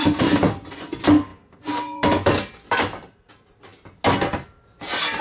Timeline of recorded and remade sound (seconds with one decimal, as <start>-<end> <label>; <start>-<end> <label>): 0.0-3.7 remade; 3.7-5.2 recorded